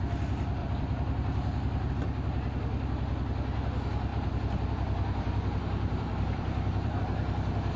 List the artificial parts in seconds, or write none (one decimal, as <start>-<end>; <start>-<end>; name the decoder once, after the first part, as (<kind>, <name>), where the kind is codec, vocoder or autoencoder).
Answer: 0.6-1.9 (vocoder, BigVGAN v2); 4.1-7.0